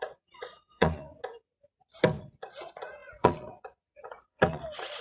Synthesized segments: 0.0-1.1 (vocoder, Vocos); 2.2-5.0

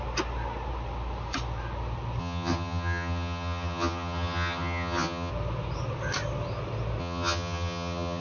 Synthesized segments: 2.2-5.3 (vocoder, HiFi-GAN); 7.0-8.2

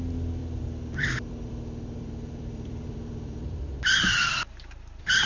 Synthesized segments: 0.4-3.6 (vocoder, BigVGAN v2)

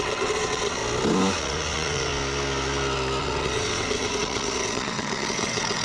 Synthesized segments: 0.0-0.8 (vocoder, WaveNeXt); 1.4-2.1; 3.2-5.8

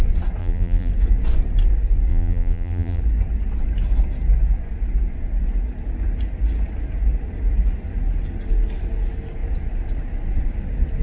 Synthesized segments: 0.4-0.9 (vocoder, BigVGAN v2); 2.1-3.0

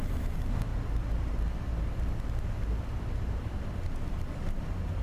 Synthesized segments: none